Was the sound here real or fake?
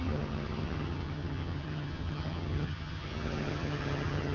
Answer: fake